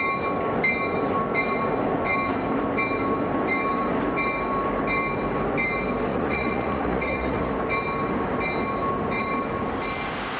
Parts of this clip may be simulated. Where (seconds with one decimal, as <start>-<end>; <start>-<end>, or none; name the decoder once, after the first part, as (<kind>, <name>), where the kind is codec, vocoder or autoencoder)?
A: 6.1-7.5 (vocoder, Vocos)